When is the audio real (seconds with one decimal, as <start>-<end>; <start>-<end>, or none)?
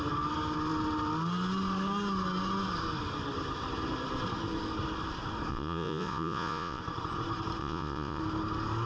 0.0-5.5; 6.8-7.6; 8.2-8.9